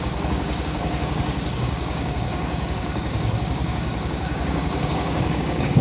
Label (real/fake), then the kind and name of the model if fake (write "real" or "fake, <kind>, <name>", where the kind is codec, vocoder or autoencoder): fake, codec, DAC